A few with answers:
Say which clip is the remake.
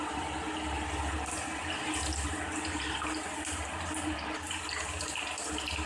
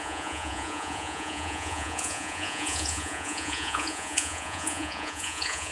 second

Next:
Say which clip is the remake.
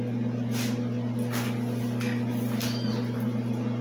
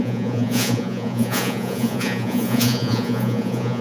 second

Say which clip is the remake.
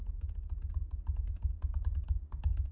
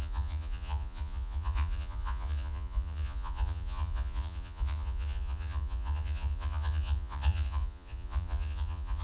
second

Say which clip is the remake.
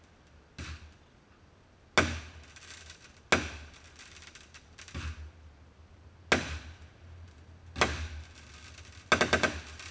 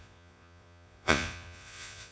second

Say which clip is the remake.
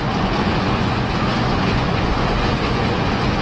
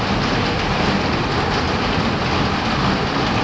first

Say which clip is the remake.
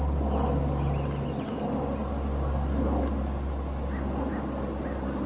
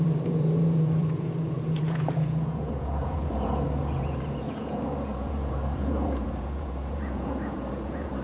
second